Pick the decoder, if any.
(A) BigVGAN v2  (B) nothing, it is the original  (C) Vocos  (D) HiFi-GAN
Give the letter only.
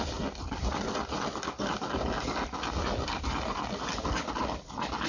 B